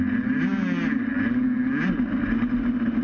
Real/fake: real